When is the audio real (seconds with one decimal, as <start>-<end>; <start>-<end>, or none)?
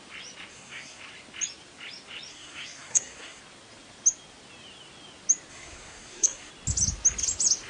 0.0-0.5; 1.0-2.3; 3.4-5.5; 6.5-7.7